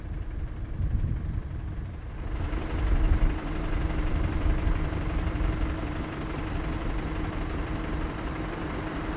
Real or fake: fake